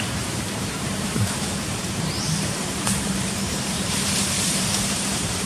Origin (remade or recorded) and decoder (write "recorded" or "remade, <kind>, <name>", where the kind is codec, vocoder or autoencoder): remade, vocoder, BigVGAN v2